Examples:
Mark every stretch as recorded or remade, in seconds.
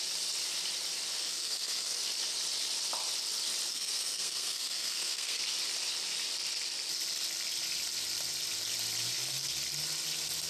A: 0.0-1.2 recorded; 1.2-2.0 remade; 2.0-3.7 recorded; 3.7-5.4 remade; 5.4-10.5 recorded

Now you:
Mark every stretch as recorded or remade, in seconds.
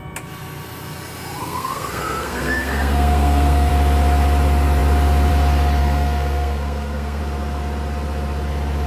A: 0.0-1.4 recorded; 1.4-3.7 remade; 3.7-5.8 recorded; 5.8-7.2 remade; 7.2-8.9 recorded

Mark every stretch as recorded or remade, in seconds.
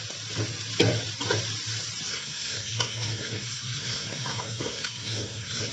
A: 0.0-2.1 recorded; 2.1-5.7 remade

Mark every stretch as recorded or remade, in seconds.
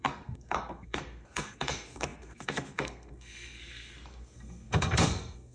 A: 0.0-5.5 remade